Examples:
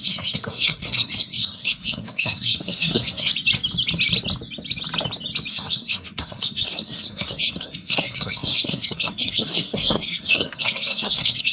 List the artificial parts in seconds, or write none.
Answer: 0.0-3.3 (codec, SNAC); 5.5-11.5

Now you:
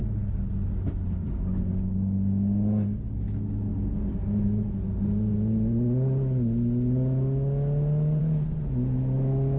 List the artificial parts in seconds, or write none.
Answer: none

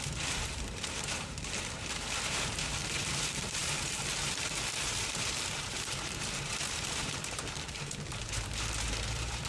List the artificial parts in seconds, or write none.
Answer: 0.0-9.5 (vocoder, BigVGAN v2)

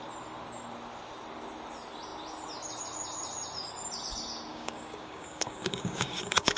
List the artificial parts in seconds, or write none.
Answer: 4.5-6.6 (codec, DAC)

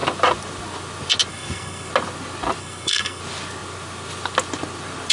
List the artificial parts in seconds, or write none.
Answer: 1.3-1.9 (codec, SNAC); 2.6-3.2

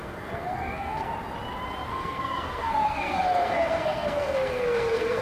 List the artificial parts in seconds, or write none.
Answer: 0.0-1.1 (codec, SNAC); 1.9-5.2

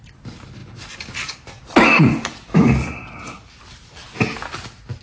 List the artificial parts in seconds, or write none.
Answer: none

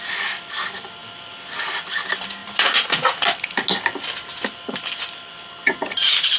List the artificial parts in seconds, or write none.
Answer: none